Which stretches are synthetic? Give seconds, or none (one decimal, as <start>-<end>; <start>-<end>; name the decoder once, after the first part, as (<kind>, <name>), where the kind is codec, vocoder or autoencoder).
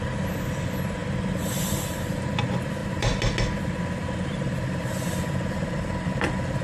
1.0-2.3 (vocoder, BigVGAN v2)